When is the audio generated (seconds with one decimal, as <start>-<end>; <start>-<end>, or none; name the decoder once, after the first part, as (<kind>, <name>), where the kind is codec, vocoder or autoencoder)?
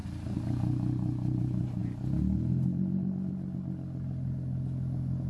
none